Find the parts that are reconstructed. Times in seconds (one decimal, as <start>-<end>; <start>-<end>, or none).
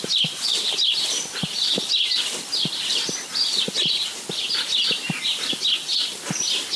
none